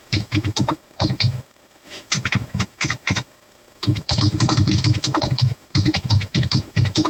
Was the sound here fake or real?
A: fake